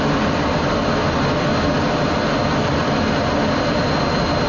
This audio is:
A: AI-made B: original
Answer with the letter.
B